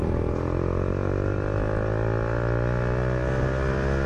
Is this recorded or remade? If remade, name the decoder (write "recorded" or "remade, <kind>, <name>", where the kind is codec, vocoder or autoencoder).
recorded